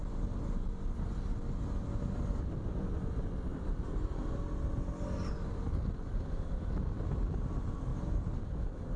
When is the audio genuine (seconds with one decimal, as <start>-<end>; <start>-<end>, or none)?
0.7-7.9; 8.4-9.0